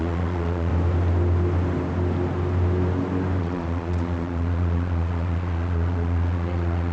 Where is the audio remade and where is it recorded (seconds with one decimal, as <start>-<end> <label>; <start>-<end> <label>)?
0.0-0.7 remade; 0.7-3.4 recorded; 3.4-6.9 remade